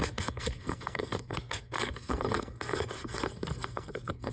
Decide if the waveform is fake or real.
fake